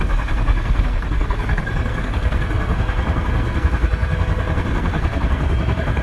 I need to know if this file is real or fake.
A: fake